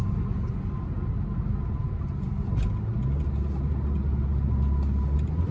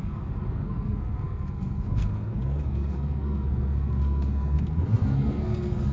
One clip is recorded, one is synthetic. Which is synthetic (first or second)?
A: second